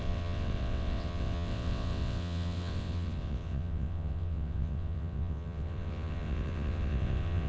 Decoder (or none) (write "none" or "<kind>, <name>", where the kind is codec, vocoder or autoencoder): vocoder, WaveNeXt